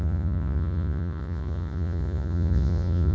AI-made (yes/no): yes